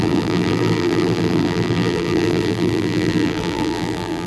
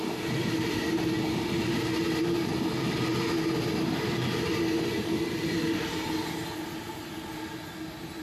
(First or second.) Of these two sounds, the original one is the second